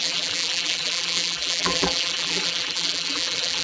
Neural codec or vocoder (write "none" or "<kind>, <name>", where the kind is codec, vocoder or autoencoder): vocoder, BigVGAN v2